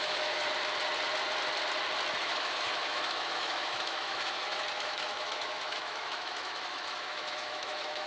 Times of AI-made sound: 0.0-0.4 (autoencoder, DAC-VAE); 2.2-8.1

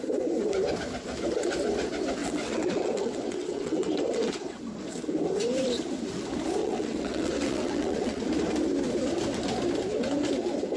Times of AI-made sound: 2.2-4.6 (vocoder, WaveNeXt); 6.6-8.2

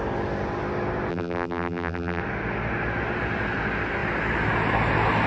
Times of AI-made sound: 1.1-2.2 (vocoder, BigVGAN v2)

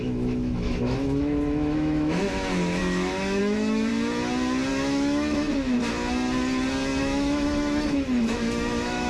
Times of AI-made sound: 0.0-3.9 (autoencoder, DAC-VAE); 4.7-5.8; 7.0-9.1